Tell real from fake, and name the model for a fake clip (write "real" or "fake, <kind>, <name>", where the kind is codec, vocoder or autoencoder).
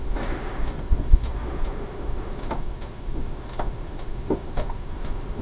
fake, autoencoder, DAC-VAE